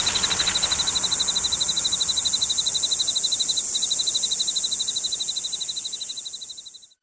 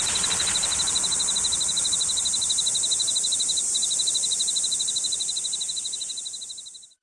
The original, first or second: first